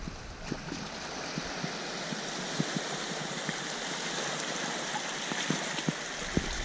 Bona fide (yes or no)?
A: yes